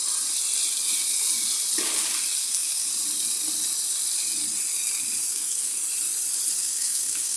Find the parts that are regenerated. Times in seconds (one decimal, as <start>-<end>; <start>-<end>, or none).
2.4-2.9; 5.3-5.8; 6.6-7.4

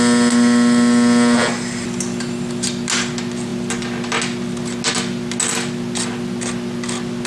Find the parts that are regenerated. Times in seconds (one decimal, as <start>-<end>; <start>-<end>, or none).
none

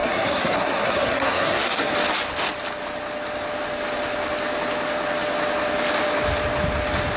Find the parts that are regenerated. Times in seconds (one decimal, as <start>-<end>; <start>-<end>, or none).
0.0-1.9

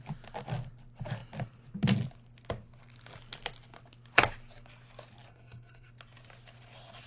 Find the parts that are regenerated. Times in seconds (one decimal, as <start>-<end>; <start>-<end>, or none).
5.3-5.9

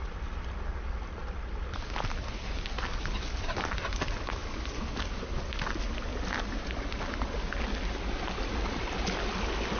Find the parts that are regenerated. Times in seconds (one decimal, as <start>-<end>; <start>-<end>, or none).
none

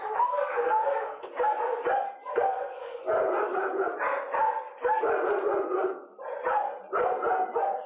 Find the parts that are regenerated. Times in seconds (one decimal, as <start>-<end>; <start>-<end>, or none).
0.0-1.3; 2.3-3.0

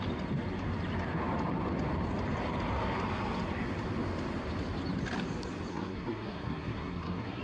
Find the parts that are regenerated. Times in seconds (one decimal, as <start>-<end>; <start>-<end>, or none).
5.7-7.4

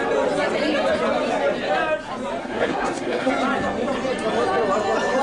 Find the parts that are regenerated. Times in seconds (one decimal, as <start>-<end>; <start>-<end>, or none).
2.4-3.3